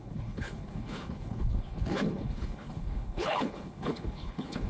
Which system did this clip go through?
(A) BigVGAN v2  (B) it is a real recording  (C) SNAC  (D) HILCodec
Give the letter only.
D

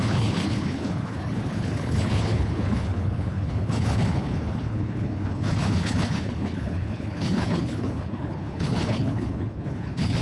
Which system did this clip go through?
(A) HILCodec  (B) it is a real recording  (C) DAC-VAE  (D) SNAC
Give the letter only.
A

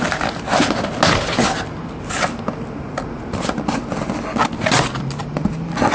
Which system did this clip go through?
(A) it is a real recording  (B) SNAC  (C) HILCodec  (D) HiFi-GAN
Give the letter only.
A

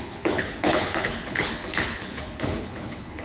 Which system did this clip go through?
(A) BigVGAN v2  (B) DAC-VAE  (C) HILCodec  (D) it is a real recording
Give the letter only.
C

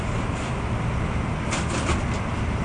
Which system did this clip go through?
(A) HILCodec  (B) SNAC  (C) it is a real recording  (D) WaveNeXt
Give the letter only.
C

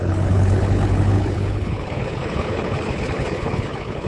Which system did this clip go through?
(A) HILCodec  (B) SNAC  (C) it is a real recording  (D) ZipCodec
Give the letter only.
A